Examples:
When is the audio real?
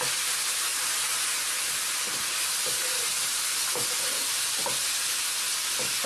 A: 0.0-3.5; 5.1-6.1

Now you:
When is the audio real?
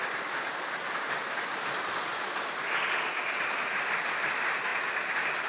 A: 0.0-5.5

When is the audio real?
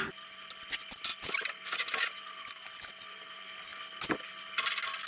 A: 1.1-2.0; 3.7-5.1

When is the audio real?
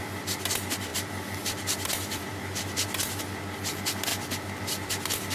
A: 0.0-0.9; 3.2-5.3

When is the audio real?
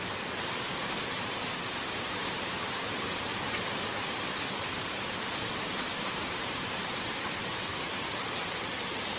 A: 3.3-4.6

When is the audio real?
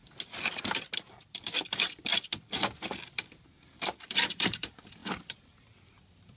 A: 0.0-1.1; 2.1-3.2